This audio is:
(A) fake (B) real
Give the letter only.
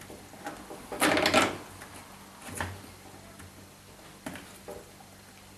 B